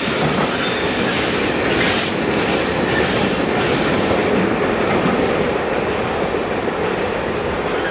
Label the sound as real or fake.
real